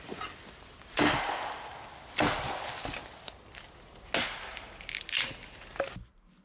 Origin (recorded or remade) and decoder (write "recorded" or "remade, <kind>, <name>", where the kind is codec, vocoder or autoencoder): recorded